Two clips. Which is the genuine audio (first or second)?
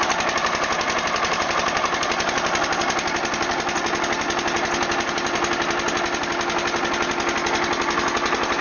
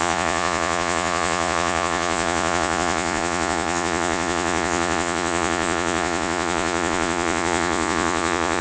first